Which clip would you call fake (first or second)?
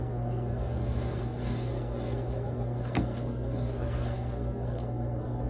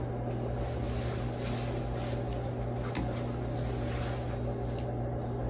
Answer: first